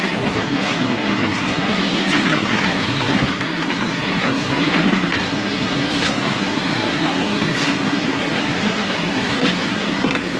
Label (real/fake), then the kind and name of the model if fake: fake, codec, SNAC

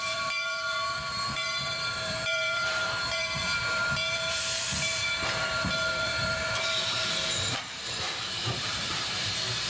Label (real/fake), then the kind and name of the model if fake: fake, vocoder, BigVGAN v2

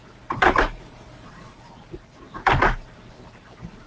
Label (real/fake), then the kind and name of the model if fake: fake, vocoder, BigVGAN v2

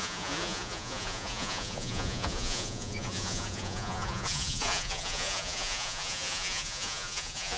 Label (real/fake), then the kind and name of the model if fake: fake, vocoder, Vocos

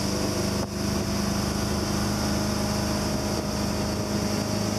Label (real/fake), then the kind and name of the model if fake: real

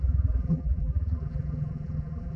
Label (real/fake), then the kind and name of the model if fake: fake, vocoder, BigVGAN v2